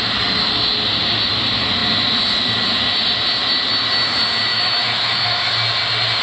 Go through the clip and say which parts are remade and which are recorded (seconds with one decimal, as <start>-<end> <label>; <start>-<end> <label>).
0.0-4.5 recorded; 4.5-5.5 remade; 5.5-6.2 recorded